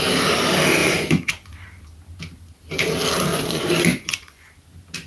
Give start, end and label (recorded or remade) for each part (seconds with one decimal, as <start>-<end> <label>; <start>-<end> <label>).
0.0-0.8 recorded; 0.8-1.3 remade; 1.3-3.3 recorded; 3.3-4.5 remade; 4.5-5.1 recorded